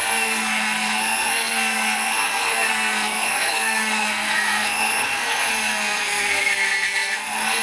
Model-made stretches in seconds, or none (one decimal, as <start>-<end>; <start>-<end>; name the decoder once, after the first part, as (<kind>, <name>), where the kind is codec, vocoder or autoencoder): 0.0-7.6 (codec, SNAC)